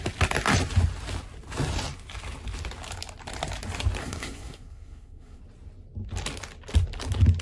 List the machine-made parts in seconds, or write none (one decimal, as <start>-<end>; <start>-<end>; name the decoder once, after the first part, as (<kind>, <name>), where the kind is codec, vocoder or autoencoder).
4.0-5.4 (codec, SNAC)